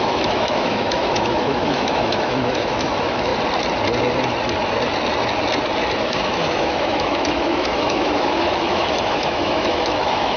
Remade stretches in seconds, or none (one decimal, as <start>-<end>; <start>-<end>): 0.0-3.3; 6.0-10.4